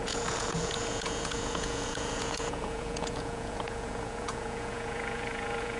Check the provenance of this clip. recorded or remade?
remade